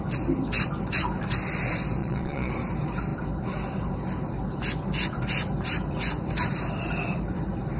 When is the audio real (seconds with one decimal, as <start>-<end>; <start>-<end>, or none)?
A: 0.0-2.0; 2.5-7.8